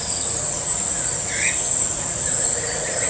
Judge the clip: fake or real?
fake